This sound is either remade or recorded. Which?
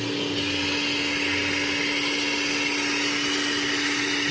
recorded